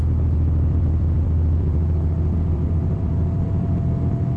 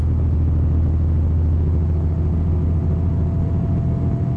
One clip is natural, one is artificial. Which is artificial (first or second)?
first